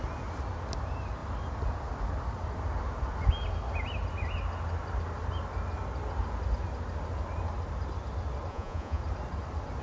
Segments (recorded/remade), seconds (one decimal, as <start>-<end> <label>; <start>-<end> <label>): 0.0-8.5 recorded; 8.5-9.0 remade; 9.0-9.8 recorded